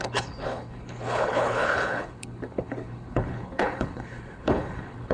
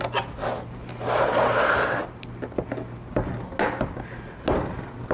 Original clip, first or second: second